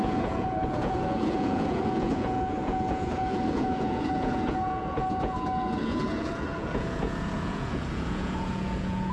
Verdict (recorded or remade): remade